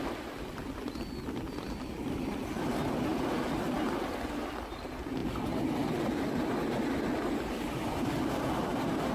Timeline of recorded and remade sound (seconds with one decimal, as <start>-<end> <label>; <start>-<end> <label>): 0.0-9.1 recorded